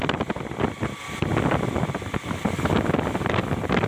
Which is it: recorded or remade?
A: recorded